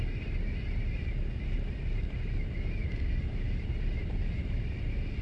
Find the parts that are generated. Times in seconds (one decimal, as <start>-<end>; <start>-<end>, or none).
none